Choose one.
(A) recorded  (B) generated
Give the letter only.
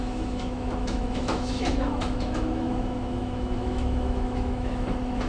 B